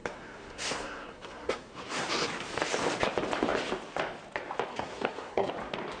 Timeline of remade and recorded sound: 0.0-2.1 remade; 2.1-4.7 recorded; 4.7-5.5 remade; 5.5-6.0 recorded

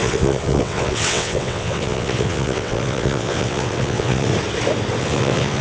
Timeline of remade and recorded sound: 0.0-4.3 remade; 4.3-5.0 recorded; 5.0-5.6 remade

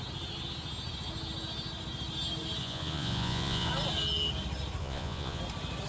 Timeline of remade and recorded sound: 0.0-2.6 recorded; 2.6-3.7 remade; 3.7-4.8 recorded; 4.8-5.4 remade; 5.4-5.9 recorded

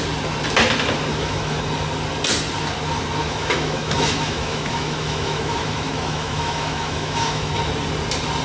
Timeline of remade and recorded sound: 0.0-1.1 recorded; 1.1-1.6 remade; 1.6-3.2 recorded; 3.2-7.5 remade; 7.5-8.4 recorded

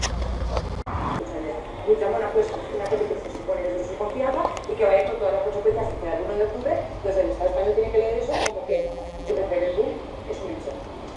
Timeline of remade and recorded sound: 0.0-8.7 recorded; 8.7-9.3 remade; 9.3-11.2 recorded

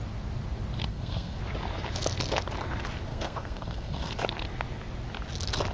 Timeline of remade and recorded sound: 0.0-0.9 recorded; 0.9-1.4 remade; 1.4-3.1 recorded; 3.1-4.1 remade; 4.1-5.7 recorded

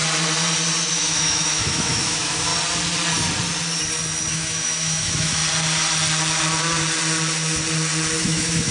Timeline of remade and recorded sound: 0.0-0.9 recorded; 0.9-2.5 remade; 2.5-4.3 recorded; 4.3-5.4 remade; 5.4-8.2 recorded; 8.2-8.7 remade